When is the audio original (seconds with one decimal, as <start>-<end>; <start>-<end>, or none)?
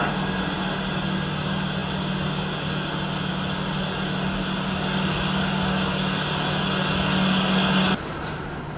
0.0-8.8